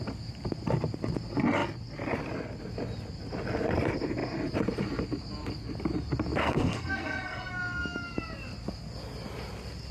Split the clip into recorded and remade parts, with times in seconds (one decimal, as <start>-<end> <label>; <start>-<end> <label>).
0.0-6.4 recorded; 6.4-7.5 remade; 7.5-9.9 recorded